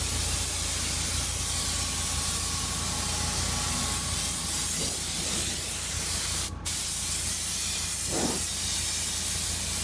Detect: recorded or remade recorded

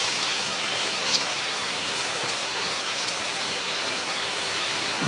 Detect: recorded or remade remade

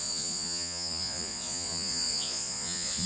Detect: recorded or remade remade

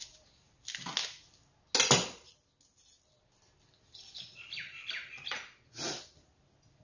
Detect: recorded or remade recorded